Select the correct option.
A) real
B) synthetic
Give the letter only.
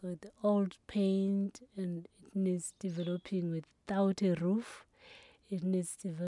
A